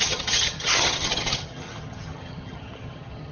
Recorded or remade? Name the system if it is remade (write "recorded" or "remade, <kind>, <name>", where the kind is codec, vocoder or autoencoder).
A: remade, vocoder, HiFi-GAN